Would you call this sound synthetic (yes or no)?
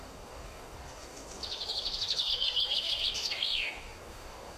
yes